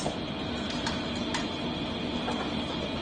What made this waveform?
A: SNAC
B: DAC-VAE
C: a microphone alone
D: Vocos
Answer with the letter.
C